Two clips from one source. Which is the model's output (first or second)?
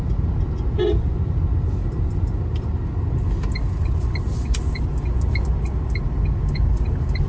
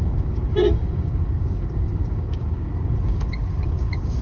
second